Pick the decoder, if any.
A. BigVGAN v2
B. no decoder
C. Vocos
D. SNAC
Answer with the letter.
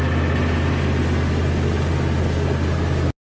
B